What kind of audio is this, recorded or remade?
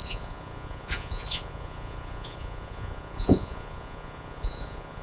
remade